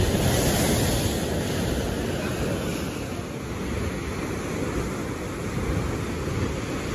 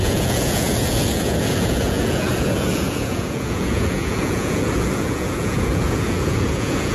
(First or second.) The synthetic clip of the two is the second